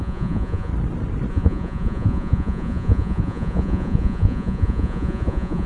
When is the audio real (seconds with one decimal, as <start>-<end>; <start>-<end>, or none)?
0.7-1.3